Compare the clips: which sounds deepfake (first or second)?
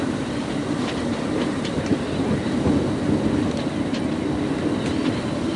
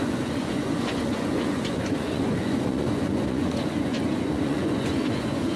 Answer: second